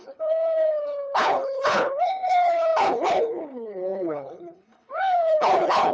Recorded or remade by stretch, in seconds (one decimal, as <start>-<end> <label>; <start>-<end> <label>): 0.0-5.9 remade